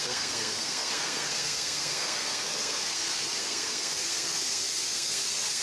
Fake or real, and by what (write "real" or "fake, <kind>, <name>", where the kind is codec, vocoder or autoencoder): fake, codec, SNAC